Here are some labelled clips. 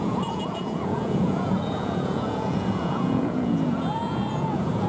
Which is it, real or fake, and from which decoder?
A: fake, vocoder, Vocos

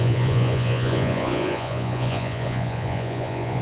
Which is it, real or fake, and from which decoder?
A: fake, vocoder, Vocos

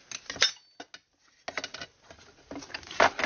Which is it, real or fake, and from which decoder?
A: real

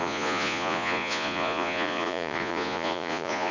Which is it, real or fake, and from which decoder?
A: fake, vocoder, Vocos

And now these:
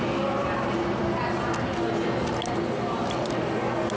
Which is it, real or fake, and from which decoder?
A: real